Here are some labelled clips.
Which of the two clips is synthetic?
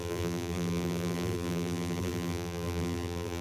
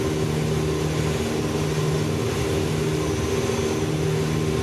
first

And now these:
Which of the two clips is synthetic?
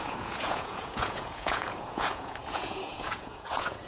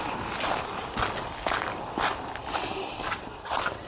first